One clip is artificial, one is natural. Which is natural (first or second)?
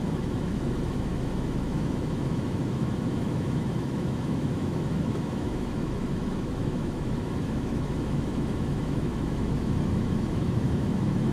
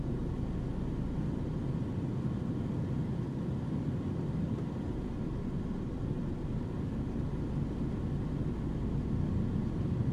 second